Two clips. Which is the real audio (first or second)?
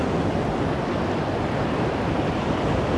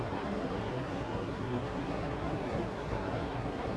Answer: first